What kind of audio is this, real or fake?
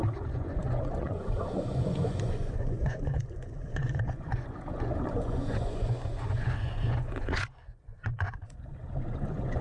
fake